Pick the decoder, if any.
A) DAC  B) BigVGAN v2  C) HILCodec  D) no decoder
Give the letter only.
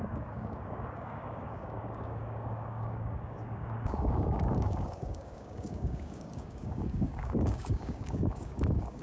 A